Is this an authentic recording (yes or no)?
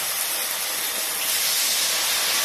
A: yes